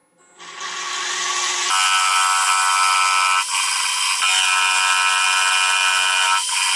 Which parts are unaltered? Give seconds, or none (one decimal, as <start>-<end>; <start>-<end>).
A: 0.0-6.8